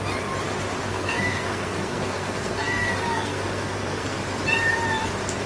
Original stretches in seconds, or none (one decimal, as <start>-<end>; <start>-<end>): 0.0-0.9; 4.2-5.5